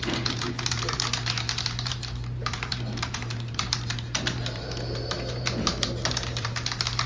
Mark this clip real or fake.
fake